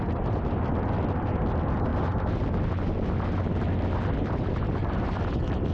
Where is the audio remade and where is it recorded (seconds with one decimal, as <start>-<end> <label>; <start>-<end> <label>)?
0.0-5.7 recorded

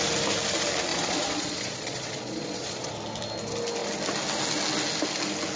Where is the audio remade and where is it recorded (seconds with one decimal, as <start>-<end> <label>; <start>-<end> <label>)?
0.0-0.9 recorded; 0.9-2.9 remade; 2.9-5.6 recorded

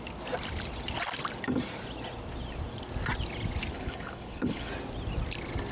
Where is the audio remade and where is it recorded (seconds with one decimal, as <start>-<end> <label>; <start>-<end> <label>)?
0.0-3.7 recorded; 3.7-4.7 remade; 4.7-5.7 recorded

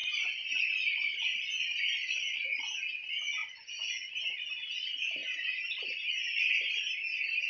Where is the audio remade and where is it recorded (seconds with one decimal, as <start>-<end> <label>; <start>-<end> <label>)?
0.0-0.6 remade; 0.6-3.4 recorded; 3.4-4.1 remade; 4.1-7.5 recorded